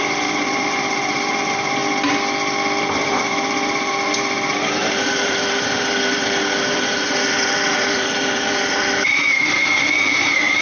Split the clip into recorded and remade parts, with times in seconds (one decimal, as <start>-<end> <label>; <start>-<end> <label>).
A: 0.0-1.8 remade; 1.8-2.8 recorded; 2.8-10.6 remade